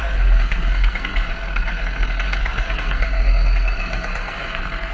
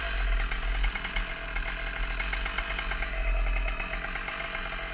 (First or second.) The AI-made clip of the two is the first